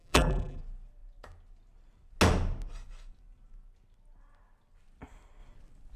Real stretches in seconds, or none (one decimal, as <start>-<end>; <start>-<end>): 0.6-6.0